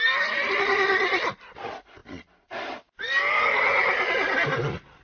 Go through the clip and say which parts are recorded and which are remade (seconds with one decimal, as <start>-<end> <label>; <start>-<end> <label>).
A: 0.0-5.0 recorded